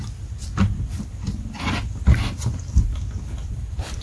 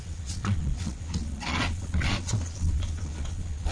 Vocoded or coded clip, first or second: second